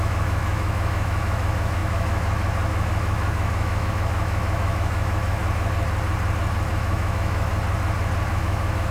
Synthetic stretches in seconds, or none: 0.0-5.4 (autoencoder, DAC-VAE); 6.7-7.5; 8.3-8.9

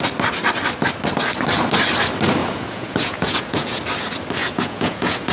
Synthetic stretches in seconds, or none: 2.4-3.8 (vocoder, Vocos); 4.4-5.3

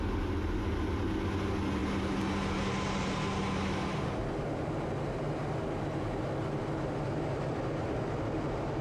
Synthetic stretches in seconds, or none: none

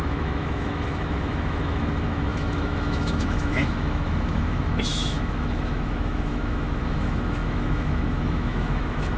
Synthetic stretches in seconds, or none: 0.0-9.2 (autoencoder, DAC-VAE)

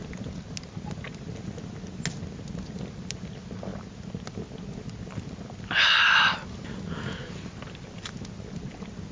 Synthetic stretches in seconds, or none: none